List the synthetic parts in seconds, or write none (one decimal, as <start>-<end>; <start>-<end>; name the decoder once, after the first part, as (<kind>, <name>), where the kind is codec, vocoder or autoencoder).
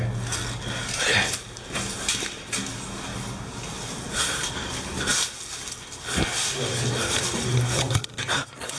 none